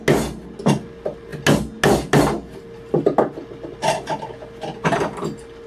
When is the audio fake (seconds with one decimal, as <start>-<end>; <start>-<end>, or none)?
none